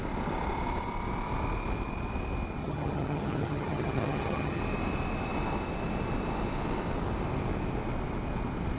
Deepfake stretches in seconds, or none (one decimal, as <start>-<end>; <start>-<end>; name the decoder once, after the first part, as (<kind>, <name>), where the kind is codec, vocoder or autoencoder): 2.6-4.6 (vocoder, HiFi-GAN)

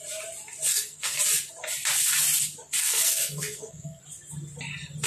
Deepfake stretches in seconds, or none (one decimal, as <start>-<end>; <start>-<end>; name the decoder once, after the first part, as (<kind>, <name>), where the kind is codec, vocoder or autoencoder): 0.7-1.2 (codec, SNAC); 2.8-4.0

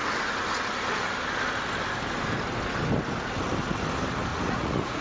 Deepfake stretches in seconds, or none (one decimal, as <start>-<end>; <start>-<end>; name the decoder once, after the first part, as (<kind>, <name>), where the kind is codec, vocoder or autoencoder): 4.3-5.0 (vocoder, Vocos)

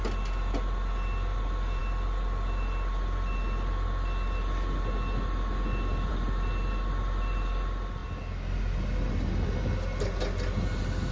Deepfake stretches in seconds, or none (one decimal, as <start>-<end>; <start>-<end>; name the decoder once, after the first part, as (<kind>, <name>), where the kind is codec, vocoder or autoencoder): none

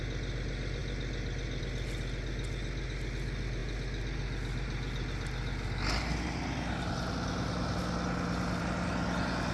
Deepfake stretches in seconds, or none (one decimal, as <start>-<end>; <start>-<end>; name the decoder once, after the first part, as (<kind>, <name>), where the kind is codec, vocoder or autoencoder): none